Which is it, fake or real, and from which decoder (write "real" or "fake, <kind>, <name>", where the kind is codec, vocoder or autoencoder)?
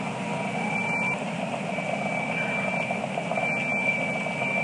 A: real